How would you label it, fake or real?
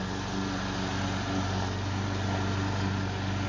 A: real